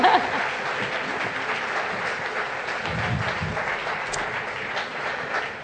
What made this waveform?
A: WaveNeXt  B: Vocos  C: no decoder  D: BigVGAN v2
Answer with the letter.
C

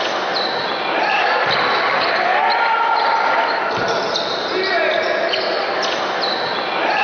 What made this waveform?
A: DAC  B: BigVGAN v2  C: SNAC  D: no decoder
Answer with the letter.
D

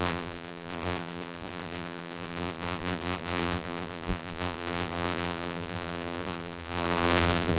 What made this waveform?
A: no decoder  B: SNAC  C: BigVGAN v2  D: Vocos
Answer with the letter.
C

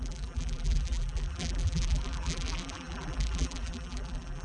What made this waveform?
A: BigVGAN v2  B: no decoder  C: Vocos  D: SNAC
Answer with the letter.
A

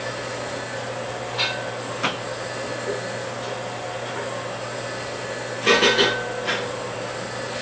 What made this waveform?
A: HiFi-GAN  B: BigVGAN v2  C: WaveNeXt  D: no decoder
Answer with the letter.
D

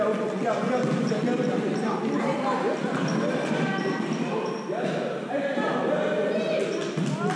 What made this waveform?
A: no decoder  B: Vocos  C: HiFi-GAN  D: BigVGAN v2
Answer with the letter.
A